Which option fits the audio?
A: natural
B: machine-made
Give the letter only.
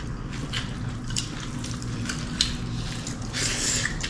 A